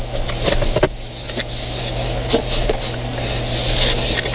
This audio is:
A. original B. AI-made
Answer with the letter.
A